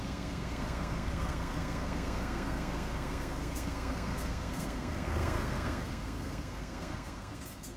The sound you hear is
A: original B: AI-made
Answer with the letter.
B